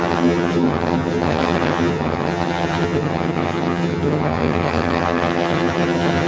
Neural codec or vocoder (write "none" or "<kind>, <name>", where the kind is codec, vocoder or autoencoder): vocoder, HiFi-GAN